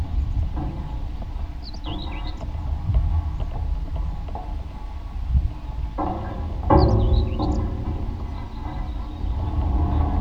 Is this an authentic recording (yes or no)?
yes